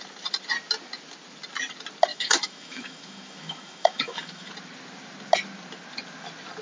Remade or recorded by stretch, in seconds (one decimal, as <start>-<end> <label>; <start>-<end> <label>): 0.0-2.1 recorded; 2.1-4.5 remade; 4.5-6.6 recorded